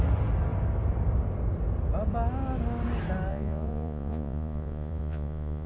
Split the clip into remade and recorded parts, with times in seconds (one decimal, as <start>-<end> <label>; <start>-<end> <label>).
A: 0.0-3.3 recorded; 3.3-5.7 remade